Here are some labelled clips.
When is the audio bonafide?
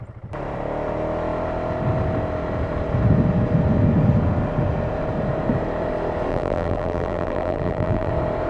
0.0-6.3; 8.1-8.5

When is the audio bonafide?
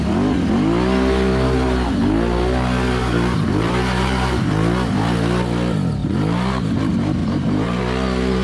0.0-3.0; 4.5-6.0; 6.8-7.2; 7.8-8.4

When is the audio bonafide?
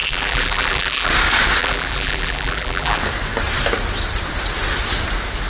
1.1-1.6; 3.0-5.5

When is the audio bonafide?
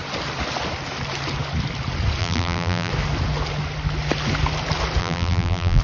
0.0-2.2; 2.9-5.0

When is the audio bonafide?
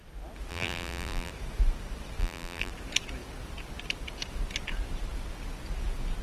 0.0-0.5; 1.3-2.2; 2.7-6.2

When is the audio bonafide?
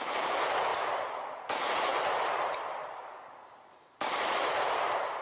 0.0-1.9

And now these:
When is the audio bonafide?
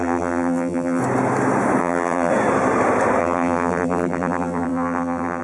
1.0-1.8; 2.3-3.2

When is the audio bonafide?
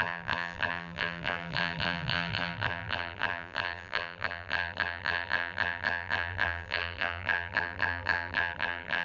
none